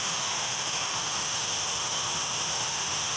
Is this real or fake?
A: fake